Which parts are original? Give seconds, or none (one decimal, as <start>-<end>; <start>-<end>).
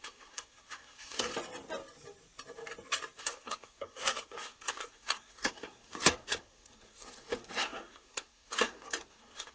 1.3-3.2